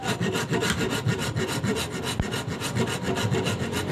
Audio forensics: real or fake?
real